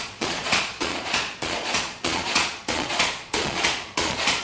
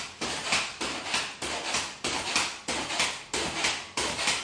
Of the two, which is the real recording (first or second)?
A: second